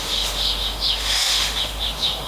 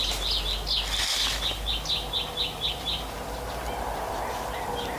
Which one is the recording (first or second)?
second